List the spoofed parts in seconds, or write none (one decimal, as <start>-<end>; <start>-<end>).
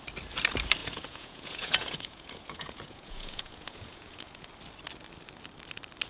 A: 0.8-4.5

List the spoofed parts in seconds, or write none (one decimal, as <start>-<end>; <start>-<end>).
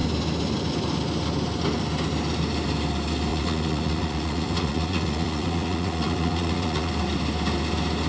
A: 3.3-6.9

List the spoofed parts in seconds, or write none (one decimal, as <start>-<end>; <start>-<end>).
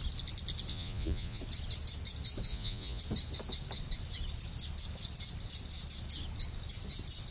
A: 0.7-1.4; 2.5-3.0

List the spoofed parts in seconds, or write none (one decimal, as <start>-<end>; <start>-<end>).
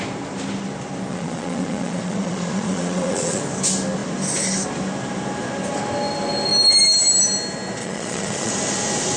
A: 1.1-3.4; 7.8-8.5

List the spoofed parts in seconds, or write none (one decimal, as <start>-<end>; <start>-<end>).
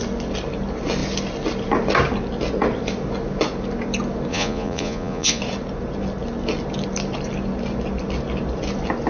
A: 4.3-5.4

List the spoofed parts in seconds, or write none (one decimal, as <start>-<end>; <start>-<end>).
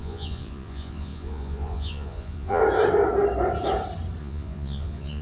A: 0.0-2.6; 4.2-5.2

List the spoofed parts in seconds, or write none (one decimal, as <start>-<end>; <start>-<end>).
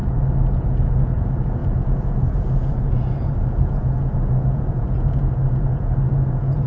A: 0.0-6.7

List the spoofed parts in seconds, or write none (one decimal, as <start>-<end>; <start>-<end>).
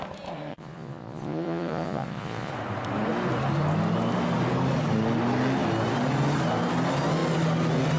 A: 0.5-2.5